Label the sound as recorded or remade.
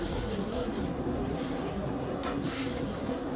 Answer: remade